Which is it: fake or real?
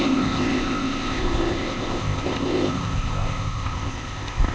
fake